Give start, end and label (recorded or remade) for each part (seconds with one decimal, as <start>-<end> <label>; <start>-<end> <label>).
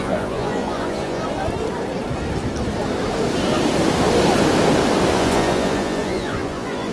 0.0-1.2 remade; 1.2-5.1 recorded; 5.1-6.9 remade